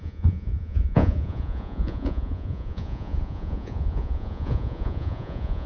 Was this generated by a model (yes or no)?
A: yes